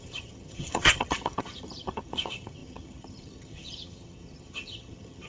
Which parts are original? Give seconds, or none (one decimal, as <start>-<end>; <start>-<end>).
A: none